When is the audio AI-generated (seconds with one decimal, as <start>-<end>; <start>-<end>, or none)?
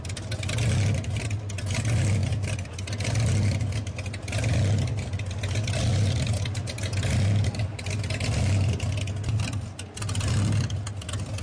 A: none